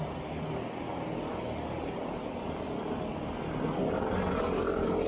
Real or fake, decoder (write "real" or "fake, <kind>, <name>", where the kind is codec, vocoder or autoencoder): real